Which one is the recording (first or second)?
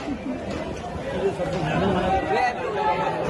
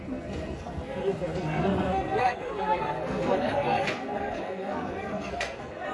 first